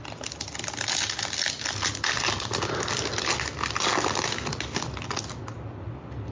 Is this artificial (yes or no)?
no